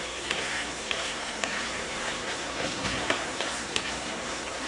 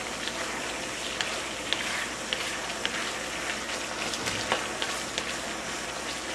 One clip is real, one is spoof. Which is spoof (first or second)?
first